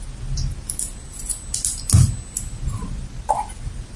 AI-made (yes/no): no